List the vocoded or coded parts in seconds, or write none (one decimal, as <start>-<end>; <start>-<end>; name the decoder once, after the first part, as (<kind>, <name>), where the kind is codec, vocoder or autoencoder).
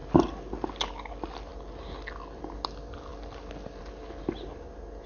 none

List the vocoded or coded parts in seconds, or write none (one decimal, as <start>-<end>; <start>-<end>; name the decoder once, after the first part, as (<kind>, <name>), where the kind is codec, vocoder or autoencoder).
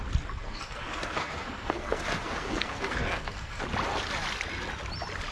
0.4-3.6 (codec, SNAC)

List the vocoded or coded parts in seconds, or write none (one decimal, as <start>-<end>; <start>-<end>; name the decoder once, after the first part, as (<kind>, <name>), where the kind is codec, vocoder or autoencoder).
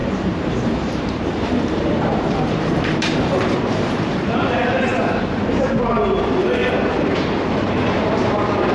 0.0-4.5 (vocoder, BigVGAN v2); 6.6-7.7